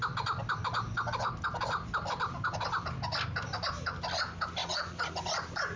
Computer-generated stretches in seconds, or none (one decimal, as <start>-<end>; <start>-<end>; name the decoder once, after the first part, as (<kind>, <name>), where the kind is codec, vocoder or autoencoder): 4.6-5.1 (vocoder, Vocos)